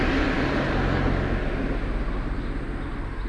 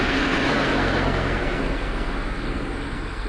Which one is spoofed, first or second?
second